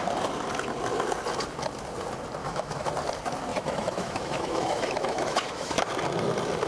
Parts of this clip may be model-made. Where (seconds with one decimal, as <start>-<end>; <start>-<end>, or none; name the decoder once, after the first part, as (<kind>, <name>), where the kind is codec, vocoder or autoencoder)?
2.4-2.9 (autoencoder, DAC-VAE); 3.5-5.9